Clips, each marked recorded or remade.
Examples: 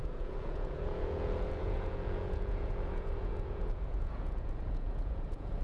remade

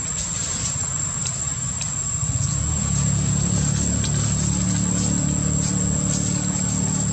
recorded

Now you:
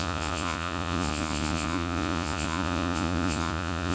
remade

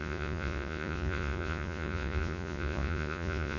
remade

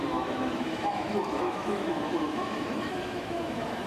remade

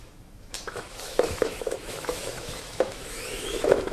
remade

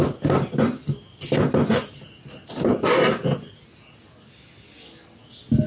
recorded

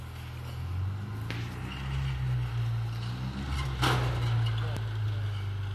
recorded